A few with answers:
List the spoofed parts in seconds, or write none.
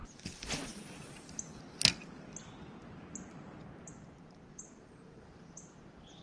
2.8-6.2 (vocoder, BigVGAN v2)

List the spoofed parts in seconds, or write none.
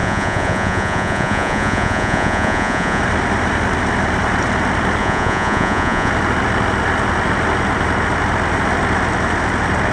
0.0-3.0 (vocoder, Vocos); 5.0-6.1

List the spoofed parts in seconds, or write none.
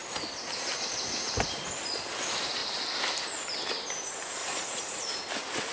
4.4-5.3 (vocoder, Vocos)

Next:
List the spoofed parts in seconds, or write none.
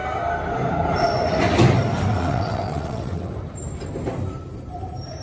2.1-3.3 (vocoder, WaveNeXt)